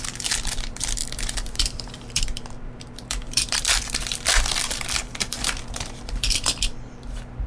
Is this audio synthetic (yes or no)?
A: yes